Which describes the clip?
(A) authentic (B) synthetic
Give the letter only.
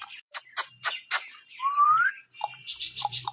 B